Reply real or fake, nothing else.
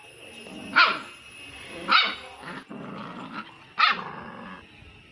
real